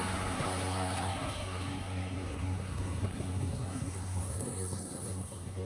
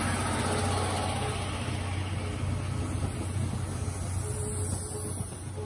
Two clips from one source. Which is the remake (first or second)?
first